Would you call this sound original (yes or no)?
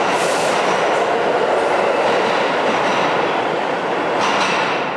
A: yes